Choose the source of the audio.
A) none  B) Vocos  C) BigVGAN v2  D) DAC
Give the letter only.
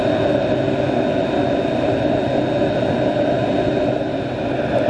A